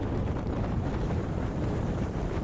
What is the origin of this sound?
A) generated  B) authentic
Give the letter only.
A